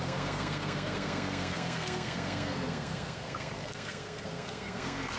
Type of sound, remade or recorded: remade